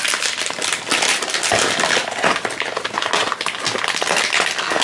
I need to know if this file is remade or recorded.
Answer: recorded